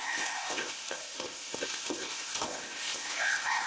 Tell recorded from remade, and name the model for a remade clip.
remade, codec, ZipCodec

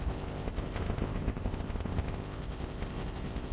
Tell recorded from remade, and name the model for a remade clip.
remade, codec, ZipCodec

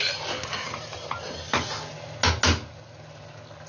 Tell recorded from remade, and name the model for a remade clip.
recorded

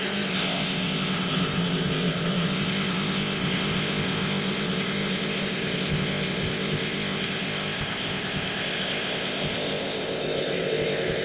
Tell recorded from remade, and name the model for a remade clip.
remade, codec, ZipCodec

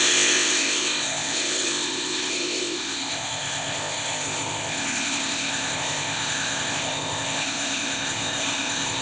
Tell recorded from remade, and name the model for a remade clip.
remade, codec, ZipCodec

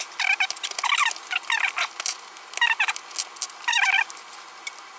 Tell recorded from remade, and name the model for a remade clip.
recorded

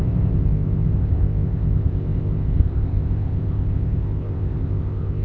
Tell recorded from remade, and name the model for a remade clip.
remade, codec, ZipCodec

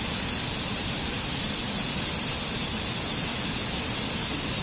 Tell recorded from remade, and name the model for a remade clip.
recorded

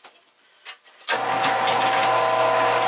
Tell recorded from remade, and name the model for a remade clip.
recorded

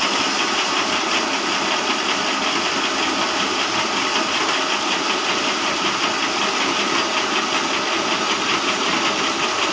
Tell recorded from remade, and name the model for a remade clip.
recorded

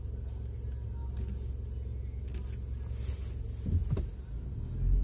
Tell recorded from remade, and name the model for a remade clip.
recorded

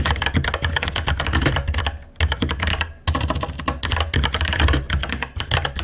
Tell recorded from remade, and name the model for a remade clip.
recorded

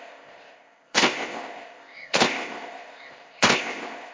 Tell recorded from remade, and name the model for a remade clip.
remade, codec, ZipCodec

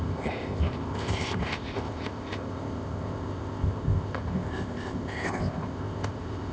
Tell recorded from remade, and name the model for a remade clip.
remade, codec, ZipCodec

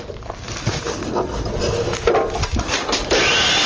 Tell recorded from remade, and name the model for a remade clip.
recorded